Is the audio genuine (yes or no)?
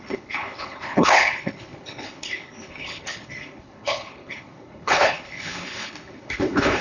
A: no